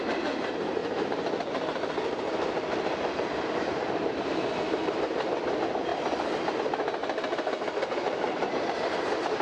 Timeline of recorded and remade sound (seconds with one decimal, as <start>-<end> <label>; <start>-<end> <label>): 0.0-0.8 recorded; 0.8-4.2 remade; 4.2-7.0 recorded; 7.0-8.5 remade; 8.5-9.4 recorded